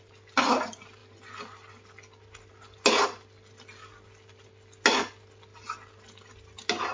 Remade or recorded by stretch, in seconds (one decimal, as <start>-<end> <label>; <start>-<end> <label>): 0.0-6.9 recorded